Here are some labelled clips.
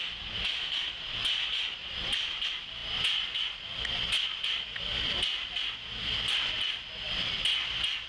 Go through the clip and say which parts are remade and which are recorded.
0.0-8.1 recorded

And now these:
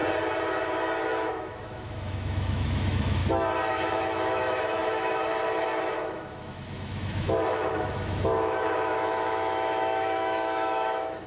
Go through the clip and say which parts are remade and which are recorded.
0.0-1.1 recorded; 1.1-3.2 remade; 3.2-3.7 recorded; 3.7-11.3 remade

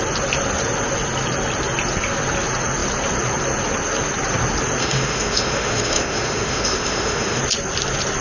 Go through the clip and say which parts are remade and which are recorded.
0.0-4.8 recorded; 4.8-7.4 remade; 7.4-8.2 recorded

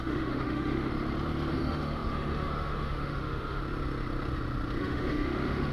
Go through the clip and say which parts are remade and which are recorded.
0.0-0.9 remade; 0.9-1.5 recorded; 1.5-3.6 remade; 3.6-4.8 recorded; 4.8-5.7 remade

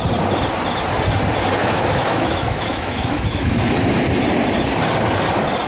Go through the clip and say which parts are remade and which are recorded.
0.0-1.6 recorded; 1.6-3.7 remade; 3.7-5.7 recorded